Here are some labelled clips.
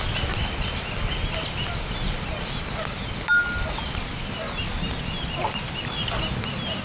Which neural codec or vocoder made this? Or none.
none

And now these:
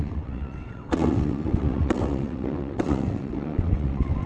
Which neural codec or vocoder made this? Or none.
vocoder, WaveNeXt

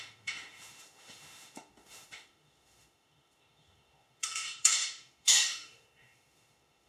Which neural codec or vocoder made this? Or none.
autoencoder, DAC-VAE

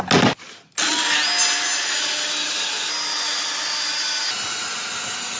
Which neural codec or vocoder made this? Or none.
none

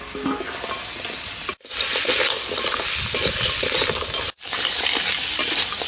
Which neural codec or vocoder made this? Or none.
none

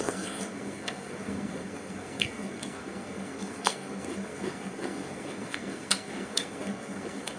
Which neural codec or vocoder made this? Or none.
codec, SNAC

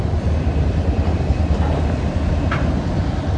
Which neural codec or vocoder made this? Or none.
none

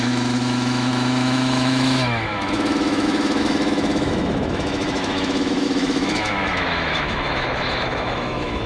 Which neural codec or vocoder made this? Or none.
autoencoder, DAC-VAE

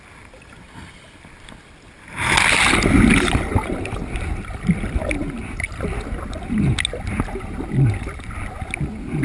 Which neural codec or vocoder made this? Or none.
none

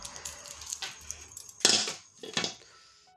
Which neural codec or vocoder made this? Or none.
none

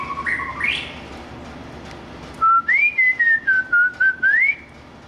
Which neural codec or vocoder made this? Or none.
none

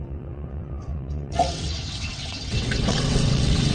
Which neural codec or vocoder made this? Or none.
vocoder, WaveNeXt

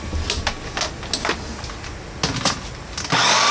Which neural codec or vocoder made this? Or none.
none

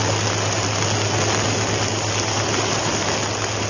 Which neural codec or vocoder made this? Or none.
none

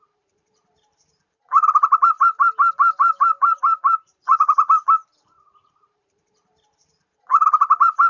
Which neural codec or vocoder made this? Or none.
vocoder, BigVGAN v2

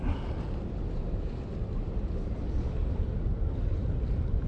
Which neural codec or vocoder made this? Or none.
none